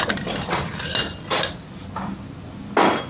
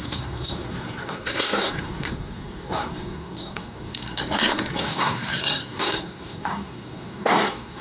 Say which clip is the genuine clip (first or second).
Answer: first